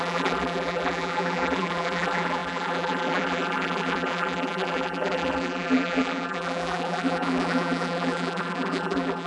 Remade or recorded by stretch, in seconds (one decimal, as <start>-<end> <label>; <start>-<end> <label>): 0.0-9.3 remade